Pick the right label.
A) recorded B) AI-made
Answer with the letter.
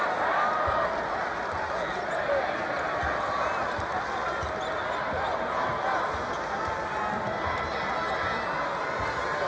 A